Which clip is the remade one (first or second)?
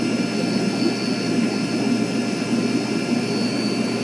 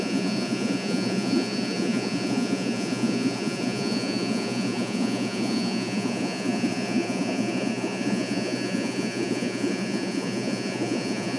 second